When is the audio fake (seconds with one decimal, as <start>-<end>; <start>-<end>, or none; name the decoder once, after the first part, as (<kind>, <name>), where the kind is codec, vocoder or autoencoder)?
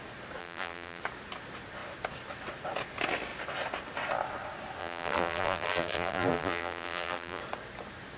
0.4-1.0 (vocoder, BigVGAN v2); 4.8-7.4